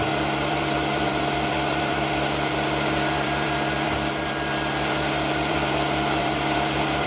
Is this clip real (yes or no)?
no